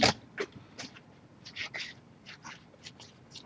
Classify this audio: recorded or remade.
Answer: recorded